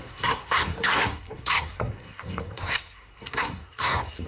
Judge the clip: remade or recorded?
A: remade